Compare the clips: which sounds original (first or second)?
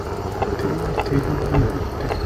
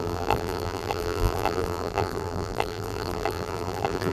first